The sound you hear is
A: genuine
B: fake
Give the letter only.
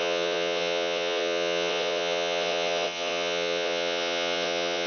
B